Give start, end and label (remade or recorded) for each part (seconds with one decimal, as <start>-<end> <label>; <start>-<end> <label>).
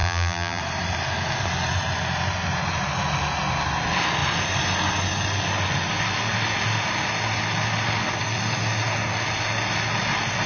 0.0-0.6 remade; 0.6-10.5 recorded